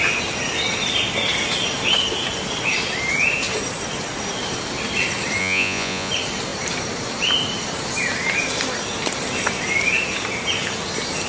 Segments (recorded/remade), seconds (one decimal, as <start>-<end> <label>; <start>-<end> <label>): 0.0-5.4 recorded; 5.4-6.1 remade; 6.1-11.3 recorded